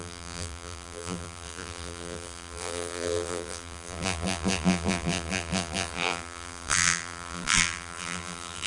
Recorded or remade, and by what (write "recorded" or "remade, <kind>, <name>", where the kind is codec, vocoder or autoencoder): remade, vocoder, BigVGAN v2